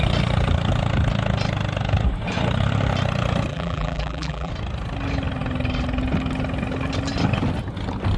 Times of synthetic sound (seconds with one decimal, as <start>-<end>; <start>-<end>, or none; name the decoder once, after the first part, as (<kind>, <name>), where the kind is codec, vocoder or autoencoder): 3.5-4.5 (vocoder, BigVGAN v2)